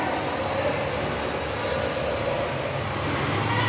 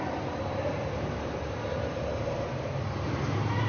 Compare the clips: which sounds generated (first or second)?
second